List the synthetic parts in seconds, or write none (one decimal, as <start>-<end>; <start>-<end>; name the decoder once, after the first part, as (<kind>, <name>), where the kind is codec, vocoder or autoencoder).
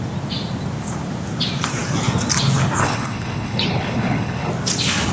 2.8-4.5 (codec, HILCodec)